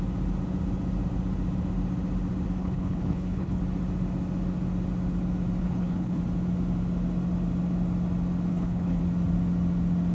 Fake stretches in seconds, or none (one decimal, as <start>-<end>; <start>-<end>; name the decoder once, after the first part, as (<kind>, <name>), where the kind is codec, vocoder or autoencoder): 2.6-3.6 (codec, HILCodec); 5.6-6.2; 8.5-9.0

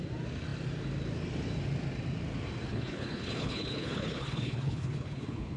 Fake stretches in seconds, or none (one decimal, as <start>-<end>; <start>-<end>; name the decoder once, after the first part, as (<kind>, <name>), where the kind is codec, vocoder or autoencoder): 2.7-5.6 (codec, HILCodec)

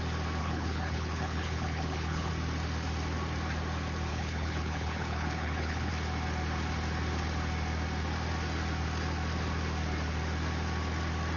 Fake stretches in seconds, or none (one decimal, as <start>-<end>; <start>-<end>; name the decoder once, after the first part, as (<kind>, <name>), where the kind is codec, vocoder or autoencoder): 0.4-2.3 (codec, HILCodec); 4.1-5.9

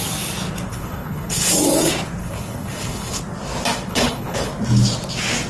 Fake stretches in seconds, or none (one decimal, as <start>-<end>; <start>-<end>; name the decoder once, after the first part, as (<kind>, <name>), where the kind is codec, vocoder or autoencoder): 0.7-1.5 (codec, HILCodec); 2.2-3.2; 3.9-4.5

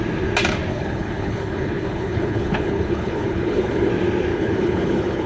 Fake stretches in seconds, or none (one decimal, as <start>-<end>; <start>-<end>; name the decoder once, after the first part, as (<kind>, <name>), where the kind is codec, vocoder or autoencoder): 0.7-3.9 (codec, HILCodec); 4.3-5.3

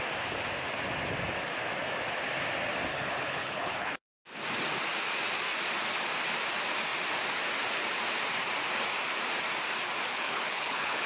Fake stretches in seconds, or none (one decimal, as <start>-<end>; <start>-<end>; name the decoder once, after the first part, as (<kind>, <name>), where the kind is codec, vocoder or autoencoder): 2.9-4.1 (codec, HILCodec); 10.1-11.1

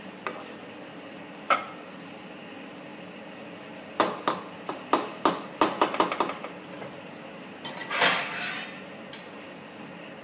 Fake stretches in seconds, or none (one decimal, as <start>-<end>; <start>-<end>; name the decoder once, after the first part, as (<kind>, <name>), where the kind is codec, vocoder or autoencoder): none